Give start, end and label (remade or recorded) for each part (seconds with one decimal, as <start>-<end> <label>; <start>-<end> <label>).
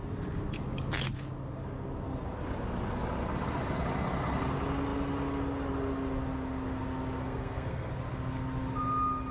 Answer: 0.0-7.2 recorded; 7.2-7.9 remade; 7.9-9.3 recorded